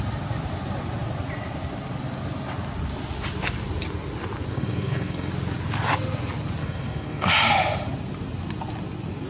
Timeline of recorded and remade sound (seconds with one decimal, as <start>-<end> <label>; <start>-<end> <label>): 0.0-4.5 recorded; 4.5-5.3 remade; 5.3-6.6 recorded; 6.6-7.3 remade; 7.3-9.3 recorded